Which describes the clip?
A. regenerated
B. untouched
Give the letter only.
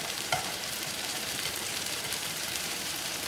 A